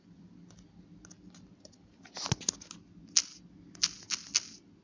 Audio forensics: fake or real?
real